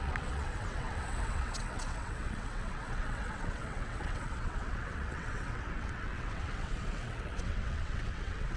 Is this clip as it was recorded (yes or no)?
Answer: no